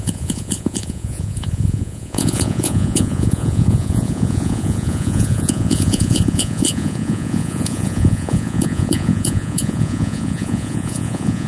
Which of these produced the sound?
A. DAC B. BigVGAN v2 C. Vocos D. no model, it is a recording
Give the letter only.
C